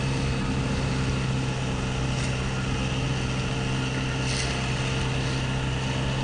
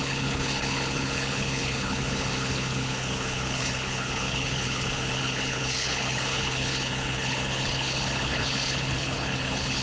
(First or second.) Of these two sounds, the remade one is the second